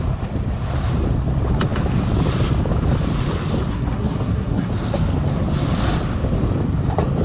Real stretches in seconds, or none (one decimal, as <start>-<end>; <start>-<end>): 0.0-3.7; 4.7-7.2